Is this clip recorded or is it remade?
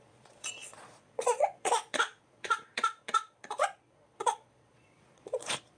remade